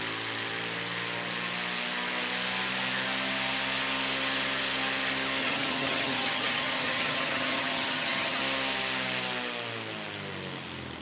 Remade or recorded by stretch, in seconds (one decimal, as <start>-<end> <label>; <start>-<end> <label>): 0.0-5.4 recorded; 5.4-8.4 remade; 8.4-11.0 recorded